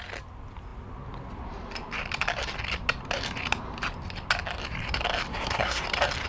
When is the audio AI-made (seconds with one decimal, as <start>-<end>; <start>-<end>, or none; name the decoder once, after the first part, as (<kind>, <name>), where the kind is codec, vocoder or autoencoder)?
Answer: 5.3-5.8 (codec, SNAC)